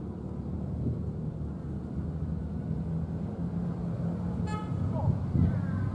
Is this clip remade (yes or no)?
no